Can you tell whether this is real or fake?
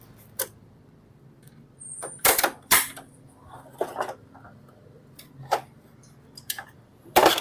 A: fake